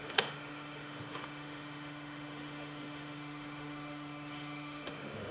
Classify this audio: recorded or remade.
remade